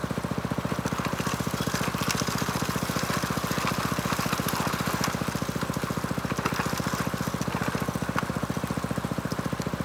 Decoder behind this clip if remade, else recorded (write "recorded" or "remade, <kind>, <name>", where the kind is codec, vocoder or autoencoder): recorded